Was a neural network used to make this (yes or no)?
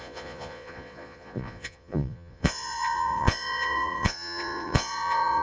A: yes